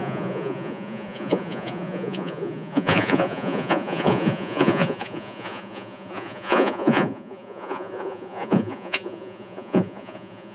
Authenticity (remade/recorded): remade